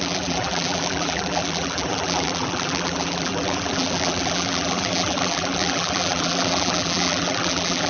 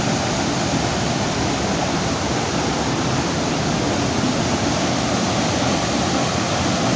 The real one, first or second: second